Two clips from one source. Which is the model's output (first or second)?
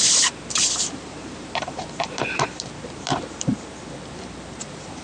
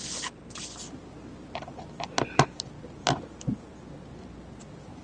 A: first